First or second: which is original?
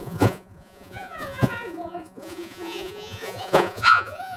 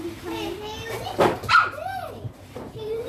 second